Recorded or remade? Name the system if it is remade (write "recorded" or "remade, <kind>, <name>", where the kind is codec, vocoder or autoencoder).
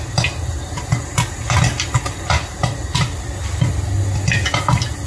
recorded